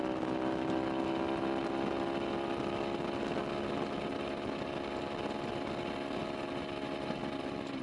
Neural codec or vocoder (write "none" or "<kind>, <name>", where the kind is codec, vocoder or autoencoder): none